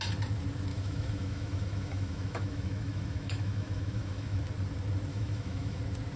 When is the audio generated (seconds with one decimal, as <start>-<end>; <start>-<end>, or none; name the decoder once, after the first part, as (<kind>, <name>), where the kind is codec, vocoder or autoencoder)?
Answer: 0.7-4.4 (autoencoder, DAC-VAE); 5.1-5.8